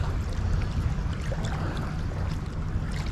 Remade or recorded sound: recorded